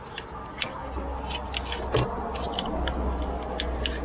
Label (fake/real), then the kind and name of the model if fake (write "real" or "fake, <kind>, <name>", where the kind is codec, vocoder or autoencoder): real